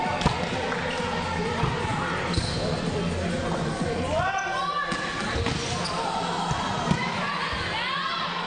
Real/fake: real